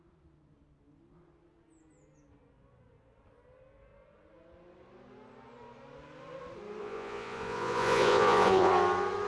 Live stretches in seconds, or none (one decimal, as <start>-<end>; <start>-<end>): 0.0-6.8; 8.7-9.3